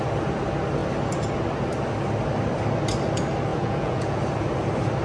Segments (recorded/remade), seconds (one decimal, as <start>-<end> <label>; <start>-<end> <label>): 0.0-3.5 recorded; 3.5-4.2 remade; 4.2-5.0 recorded